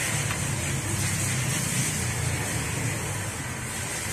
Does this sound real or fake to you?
real